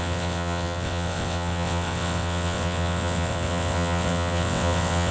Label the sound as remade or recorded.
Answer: remade